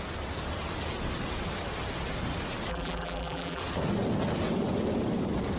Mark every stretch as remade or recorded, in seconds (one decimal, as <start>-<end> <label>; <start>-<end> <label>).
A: 0.0-2.7 recorded; 2.7-3.6 remade; 3.6-5.6 recorded